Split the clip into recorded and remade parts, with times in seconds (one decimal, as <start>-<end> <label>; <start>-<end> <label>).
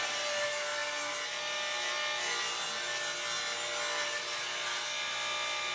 0.0-5.7 recorded